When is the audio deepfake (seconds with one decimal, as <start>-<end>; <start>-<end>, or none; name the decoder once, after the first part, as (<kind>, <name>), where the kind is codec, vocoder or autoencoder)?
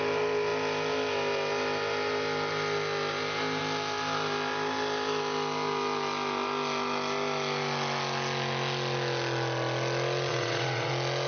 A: 10.3-10.9 (vocoder, WaveNeXt)